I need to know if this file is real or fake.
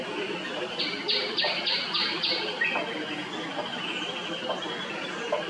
real